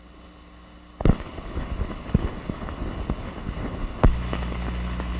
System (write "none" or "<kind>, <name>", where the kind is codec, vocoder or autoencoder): codec, HILCodec